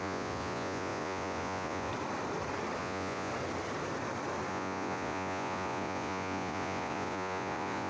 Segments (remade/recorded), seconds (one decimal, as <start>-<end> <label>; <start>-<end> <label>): 0.0-1.9 remade; 1.9-2.8 recorded; 2.8-3.3 remade; 3.3-4.5 recorded; 4.5-7.9 remade